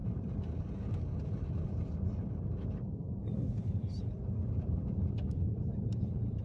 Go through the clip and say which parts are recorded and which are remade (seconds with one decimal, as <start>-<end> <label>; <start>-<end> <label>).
0.0-6.4 remade